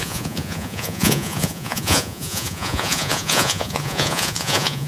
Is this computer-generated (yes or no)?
yes